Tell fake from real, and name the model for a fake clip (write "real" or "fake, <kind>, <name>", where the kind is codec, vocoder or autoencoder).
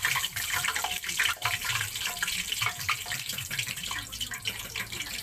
fake, vocoder, BigVGAN v2